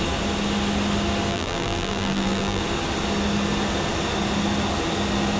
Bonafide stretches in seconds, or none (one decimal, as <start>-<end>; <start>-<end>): 0.0-1.3; 2.6-5.4